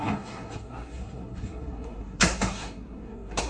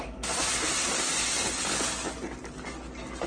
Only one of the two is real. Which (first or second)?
second